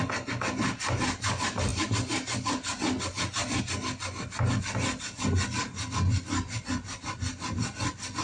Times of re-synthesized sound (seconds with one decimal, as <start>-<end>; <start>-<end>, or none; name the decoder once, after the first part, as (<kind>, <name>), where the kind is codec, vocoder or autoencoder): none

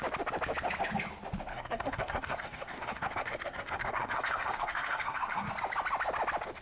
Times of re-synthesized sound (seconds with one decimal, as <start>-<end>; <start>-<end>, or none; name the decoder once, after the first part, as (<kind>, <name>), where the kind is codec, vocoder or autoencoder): 1.5-5.5 (codec, SNAC)

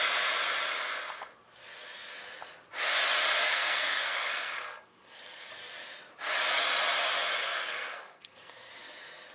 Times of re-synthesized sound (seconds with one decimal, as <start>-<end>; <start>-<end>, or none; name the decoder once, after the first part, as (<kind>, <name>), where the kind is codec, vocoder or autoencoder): 3.4-5.5 (codec, SNAC); 7.4-8.7

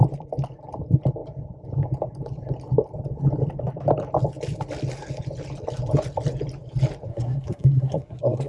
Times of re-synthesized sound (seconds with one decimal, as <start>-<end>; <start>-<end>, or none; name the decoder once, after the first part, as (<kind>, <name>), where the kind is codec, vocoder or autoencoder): 7.1-8.5 (codec, SNAC)